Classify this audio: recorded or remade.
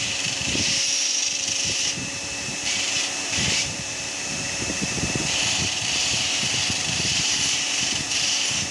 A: remade